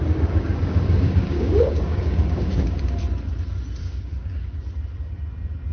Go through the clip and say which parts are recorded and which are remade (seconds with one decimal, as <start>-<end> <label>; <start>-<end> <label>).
0.0-2.9 remade; 2.9-3.8 recorded; 3.8-4.6 remade; 4.6-5.7 recorded